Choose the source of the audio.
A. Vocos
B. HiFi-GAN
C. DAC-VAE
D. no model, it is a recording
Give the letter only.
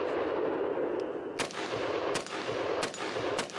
D